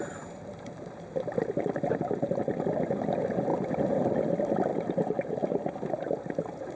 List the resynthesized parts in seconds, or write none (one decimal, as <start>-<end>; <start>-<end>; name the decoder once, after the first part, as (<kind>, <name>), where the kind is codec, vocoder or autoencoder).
3.5-4.1 (vocoder, BigVGAN v2)